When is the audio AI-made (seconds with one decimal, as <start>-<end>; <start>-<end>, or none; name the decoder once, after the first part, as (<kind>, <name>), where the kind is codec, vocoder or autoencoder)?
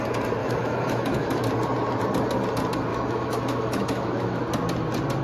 0.4-1.4 (autoencoder, DAC-VAE); 2.9-4.4